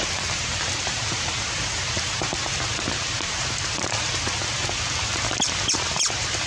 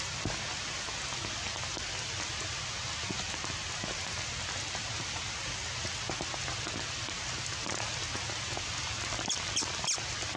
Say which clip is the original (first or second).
second